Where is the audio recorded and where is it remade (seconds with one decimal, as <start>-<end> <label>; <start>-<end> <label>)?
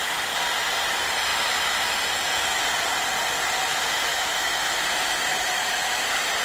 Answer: 0.0-4.1 recorded; 4.1-4.7 remade; 4.7-5.3 recorded; 5.3-6.0 remade; 6.0-6.4 recorded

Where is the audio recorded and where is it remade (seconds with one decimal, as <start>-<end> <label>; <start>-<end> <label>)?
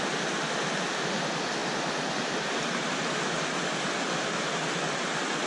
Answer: 0.0-5.5 recorded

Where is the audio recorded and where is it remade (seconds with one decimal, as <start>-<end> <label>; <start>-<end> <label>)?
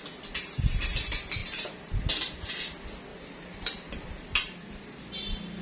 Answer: 0.0-1.4 recorded; 1.4-2.3 remade; 2.3-3.1 recorded; 3.1-4.1 remade; 4.1-5.6 recorded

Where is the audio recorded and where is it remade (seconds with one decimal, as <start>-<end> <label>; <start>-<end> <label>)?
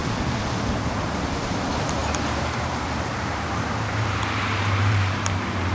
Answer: 0.0-2.0 recorded; 2.0-5.7 remade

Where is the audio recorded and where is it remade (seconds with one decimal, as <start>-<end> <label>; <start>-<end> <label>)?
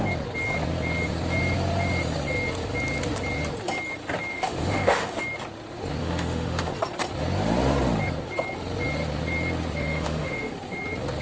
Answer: 0.0-4.3 recorded; 4.3-5.2 remade; 5.2-6.0 recorded; 6.0-6.7 remade; 6.7-9.8 recorded; 9.8-10.5 remade; 10.5-11.2 recorded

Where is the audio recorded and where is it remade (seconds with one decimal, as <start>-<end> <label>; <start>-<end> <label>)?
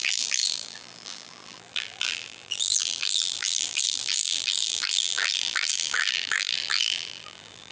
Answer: 0.0-7.7 remade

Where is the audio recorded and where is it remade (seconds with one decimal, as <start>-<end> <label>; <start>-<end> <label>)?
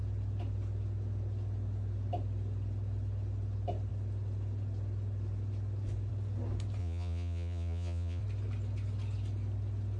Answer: 0.0-6.8 recorded; 6.8-8.2 remade; 8.2-10.0 recorded